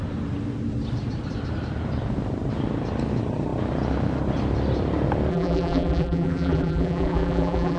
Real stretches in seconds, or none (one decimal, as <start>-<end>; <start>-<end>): 0.0-5.3